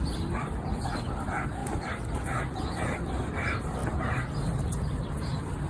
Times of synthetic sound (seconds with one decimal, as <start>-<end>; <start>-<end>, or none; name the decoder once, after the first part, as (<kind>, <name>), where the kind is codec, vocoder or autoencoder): none